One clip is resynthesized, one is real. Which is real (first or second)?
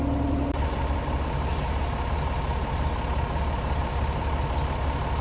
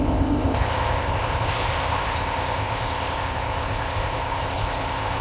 first